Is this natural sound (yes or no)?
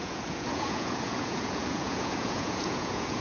no